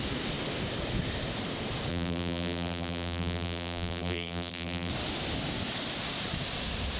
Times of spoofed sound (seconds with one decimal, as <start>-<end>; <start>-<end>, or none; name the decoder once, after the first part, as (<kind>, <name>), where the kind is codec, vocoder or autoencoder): 1.9-4.9 (vocoder, BigVGAN v2)

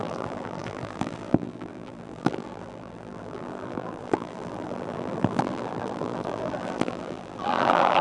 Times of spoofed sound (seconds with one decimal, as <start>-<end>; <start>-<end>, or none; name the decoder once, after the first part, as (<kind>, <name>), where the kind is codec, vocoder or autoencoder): 0.0-8.0 (vocoder, BigVGAN v2)

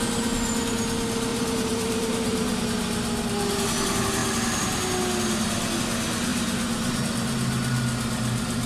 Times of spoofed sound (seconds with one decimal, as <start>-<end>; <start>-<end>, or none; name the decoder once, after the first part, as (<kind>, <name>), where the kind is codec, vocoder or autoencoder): 1.3-2.6 (vocoder, BigVGAN v2); 6.3-7.0

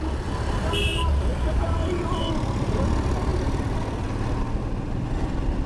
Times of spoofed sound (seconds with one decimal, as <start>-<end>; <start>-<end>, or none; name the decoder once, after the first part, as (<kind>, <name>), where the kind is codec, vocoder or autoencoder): 0.8-2.2 (vocoder, BigVGAN v2)

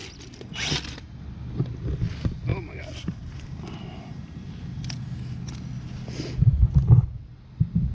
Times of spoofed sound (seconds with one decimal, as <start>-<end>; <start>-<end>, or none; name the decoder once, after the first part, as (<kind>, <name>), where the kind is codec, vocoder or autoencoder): 2.5-4.6 (vocoder, BigVGAN v2)

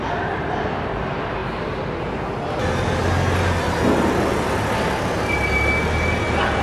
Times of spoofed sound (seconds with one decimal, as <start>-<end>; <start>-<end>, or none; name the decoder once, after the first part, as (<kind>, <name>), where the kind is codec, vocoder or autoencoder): none